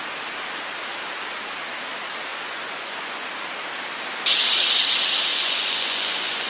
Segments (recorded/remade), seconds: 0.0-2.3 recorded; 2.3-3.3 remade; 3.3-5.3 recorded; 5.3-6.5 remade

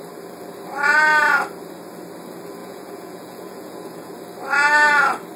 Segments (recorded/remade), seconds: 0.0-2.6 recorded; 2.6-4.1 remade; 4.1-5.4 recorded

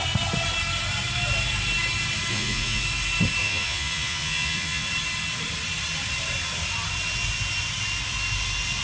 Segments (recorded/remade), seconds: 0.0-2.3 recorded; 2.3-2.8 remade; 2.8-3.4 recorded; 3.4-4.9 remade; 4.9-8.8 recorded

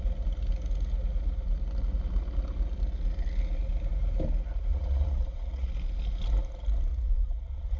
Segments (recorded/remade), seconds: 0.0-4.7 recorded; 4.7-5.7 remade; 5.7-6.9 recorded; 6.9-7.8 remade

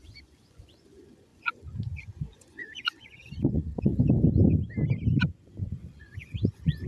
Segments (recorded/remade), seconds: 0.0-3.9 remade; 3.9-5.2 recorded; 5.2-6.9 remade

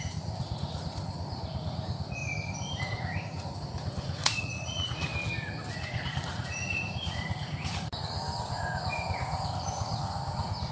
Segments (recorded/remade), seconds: 0.0-2.2 remade; 2.2-2.8 recorded; 2.8-5.1 remade; 5.1-5.7 recorded; 5.7-7.9 remade; 7.9-8.4 recorded; 8.4-10.7 remade

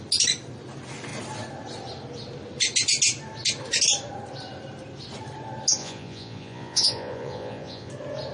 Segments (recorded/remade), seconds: 0.0-5.8 recorded; 5.8-7.9 remade; 7.9-8.3 recorded

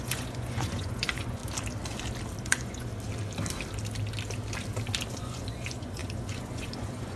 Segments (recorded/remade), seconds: 0.0-1.4 remade; 1.4-2.4 recorded; 2.4-2.9 remade; 2.9-5.1 recorded; 5.1-7.2 remade